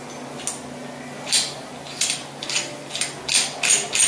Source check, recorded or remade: recorded